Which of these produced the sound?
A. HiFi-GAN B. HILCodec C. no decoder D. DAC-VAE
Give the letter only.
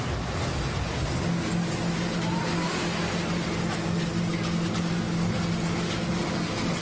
C